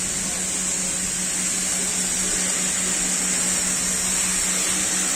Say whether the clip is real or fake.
real